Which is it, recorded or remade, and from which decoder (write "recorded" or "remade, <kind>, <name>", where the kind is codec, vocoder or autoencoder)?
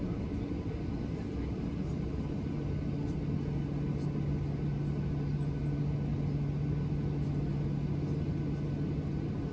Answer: recorded